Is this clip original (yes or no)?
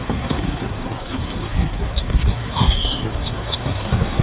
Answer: no